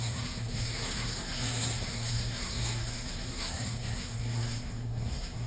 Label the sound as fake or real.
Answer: fake